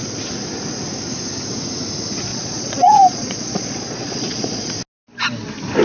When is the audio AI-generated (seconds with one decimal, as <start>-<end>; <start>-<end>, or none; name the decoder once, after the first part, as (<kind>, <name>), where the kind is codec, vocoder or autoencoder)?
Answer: 2.3-4.7 (vocoder, Vocos)

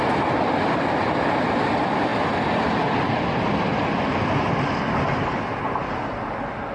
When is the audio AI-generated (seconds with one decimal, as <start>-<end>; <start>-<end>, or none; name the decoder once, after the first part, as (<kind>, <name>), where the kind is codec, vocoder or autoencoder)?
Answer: none

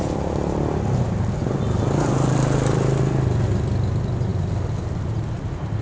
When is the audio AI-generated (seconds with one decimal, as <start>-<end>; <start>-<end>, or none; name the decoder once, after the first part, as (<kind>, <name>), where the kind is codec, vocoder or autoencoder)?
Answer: none

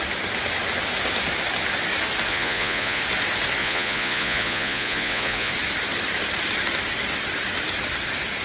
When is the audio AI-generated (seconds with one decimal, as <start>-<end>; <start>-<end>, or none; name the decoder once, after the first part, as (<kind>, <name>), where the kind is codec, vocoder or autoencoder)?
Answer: 2.3-3.0 (vocoder, Vocos); 3.6-5.5